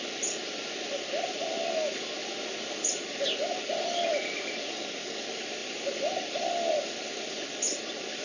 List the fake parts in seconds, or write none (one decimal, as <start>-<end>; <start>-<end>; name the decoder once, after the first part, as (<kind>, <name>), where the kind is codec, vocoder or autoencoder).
none